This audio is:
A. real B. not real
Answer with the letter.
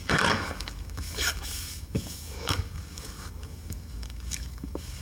B